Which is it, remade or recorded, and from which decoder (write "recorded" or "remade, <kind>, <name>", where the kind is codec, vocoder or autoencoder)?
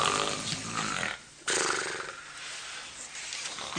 recorded